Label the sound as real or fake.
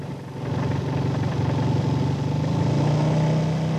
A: real